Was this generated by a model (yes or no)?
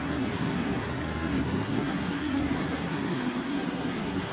yes